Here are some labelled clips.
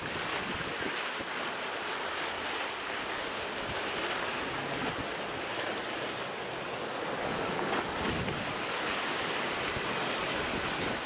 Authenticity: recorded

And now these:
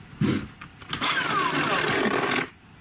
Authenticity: recorded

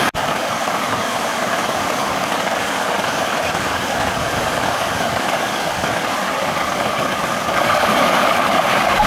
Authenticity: remade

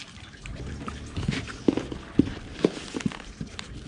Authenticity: recorded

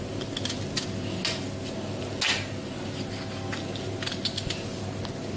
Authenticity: recorded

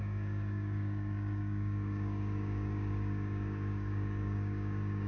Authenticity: remade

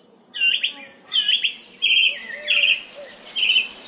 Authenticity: recorded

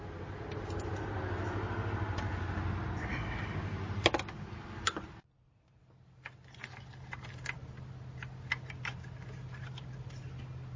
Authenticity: recorded